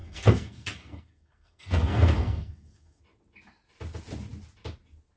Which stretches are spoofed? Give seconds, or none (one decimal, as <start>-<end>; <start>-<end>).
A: 0.0-3.0